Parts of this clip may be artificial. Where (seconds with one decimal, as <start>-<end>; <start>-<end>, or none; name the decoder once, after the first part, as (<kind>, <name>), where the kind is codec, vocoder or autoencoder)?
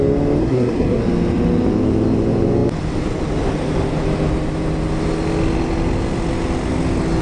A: 0.4-1.0 (codec, SNAC)